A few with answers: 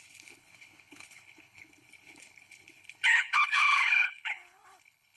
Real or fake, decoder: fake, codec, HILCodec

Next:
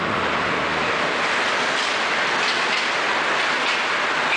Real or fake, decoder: real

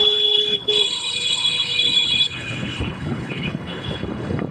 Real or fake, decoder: fake, codec, HILCodec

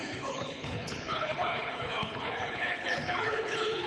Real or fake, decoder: fake, codec, HILCodec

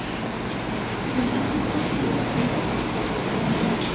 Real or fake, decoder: real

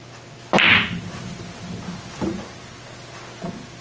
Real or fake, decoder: real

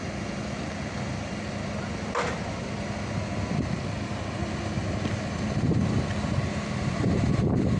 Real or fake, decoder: real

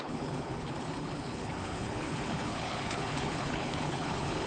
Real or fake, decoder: fake, codec, HILCodec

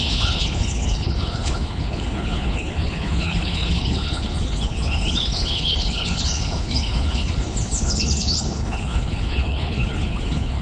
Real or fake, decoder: fake, codec, HILCodec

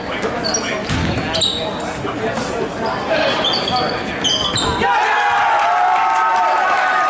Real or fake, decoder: real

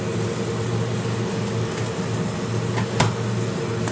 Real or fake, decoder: real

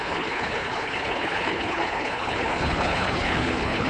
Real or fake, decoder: fake, codec, HILCodec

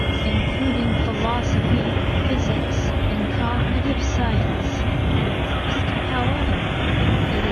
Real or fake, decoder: real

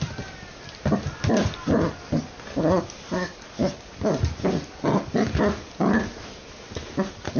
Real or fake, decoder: real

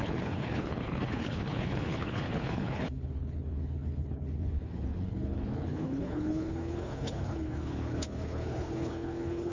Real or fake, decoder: fake, codec, HILCodec